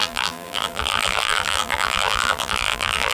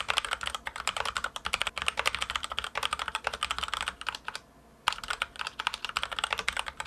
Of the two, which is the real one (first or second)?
second